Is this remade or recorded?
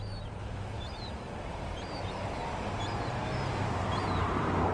remade